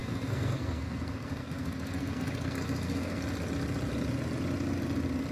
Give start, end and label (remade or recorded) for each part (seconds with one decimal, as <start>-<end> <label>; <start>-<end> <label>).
0.0-3.2 remade; 3.2-5.3 recorded